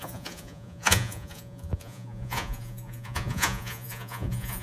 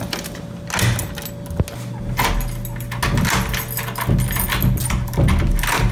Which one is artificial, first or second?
first